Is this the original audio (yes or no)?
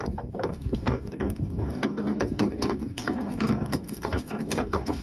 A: no